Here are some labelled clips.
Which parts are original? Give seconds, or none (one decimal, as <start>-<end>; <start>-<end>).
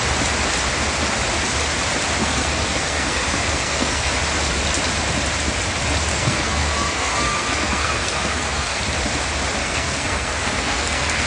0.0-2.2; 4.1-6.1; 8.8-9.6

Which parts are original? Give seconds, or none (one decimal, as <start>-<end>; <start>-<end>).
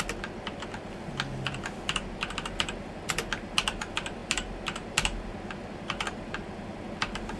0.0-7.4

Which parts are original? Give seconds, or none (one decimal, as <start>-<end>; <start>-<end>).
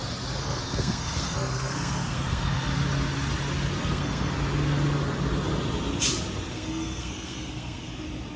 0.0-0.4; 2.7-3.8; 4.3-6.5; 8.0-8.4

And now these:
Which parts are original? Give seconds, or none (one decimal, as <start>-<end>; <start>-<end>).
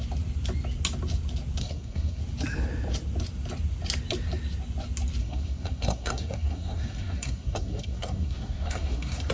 0.0-1.6; 2.2-5.2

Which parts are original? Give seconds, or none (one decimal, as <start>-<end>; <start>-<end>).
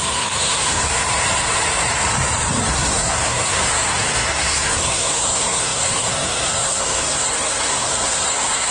0.8-2.6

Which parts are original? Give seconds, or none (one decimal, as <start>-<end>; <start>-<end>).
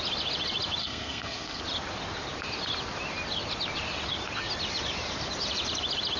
0.0-0.8; 1.6-6.2